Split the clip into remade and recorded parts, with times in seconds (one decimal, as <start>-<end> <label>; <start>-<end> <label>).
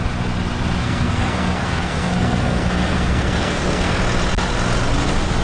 0.0-0.8 recorded; 0.8-4.0 remade; 4.0-5.4 recorded